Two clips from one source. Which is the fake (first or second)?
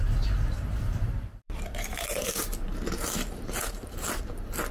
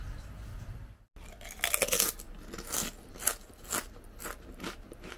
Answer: first